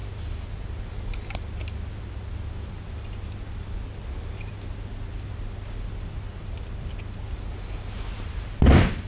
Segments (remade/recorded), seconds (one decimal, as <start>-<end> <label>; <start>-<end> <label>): 0.0-9.1 recorded